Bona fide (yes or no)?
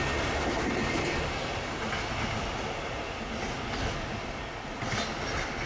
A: yes